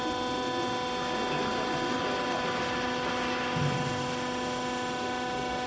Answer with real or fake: real